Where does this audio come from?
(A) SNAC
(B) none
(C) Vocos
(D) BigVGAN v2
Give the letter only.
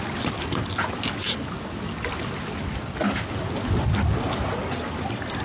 B